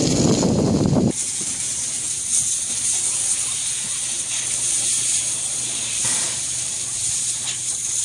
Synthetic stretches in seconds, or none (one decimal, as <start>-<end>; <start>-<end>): 0.5-2.3; 4.7-8.0